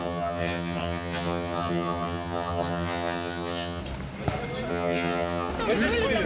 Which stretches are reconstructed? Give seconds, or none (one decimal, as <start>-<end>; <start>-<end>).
0.0-3.8; 4.7-5.5